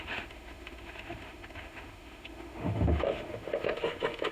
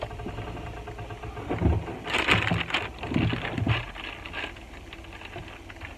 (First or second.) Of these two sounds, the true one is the second